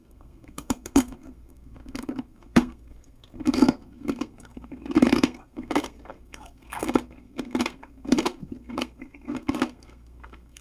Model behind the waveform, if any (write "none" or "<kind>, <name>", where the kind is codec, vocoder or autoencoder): codec, SNAC